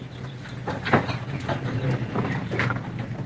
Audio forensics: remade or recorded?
remade